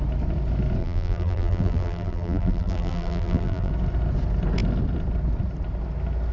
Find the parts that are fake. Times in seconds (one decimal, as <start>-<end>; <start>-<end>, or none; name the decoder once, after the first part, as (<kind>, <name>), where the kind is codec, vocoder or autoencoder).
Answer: 0.8-3.7 (vocoder, BigVGAN v2)